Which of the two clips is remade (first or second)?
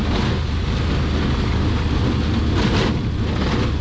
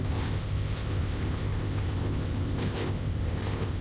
second